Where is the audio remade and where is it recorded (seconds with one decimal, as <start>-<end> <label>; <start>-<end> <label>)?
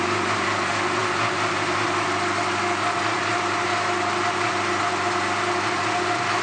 0.0-6.4 recorded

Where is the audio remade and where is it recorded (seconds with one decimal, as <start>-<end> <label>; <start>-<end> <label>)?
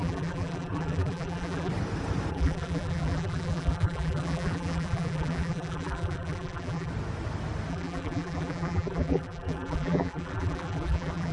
0.0-1.7 remade; 1.7-2.3 recorded; 2.3-6.9 remade; 6.9-7.7 recorded; 7.7-11.3 remade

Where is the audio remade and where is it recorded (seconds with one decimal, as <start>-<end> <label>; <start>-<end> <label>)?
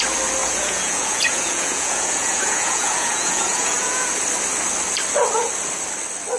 0.0-0.4 recorded; 0.4-4.1 remade; 4.1-6.4 recorded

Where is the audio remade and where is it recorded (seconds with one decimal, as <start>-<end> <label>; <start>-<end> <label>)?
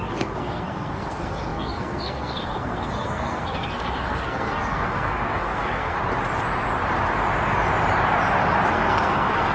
0.0-6.0 remade; 6.0-8.7 recorded; 8.7-9.5 remade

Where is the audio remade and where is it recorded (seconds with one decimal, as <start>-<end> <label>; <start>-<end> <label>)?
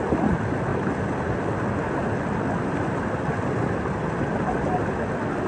0.0-5.5 recorded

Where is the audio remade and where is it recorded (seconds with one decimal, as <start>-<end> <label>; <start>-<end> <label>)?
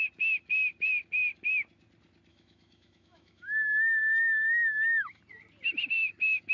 0.0-2.3 recorded; 2.3-5.2 remade; 5.2-6.5 recorded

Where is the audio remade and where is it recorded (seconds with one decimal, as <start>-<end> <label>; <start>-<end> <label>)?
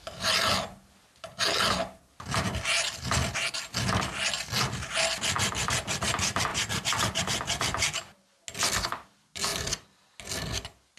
0.0-6.5 recorded; 6.5-7.2 remade; 7.2-9.5 recorded; 9.5-10.2 remade; 10.2-11.0 recorded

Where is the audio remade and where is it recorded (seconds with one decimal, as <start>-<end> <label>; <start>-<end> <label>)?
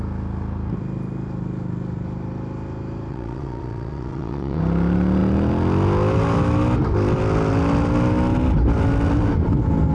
0.0-3.1 recorded; 3.1-4.6 remade; 4.6-9.9 recorded